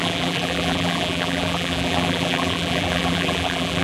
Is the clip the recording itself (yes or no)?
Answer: no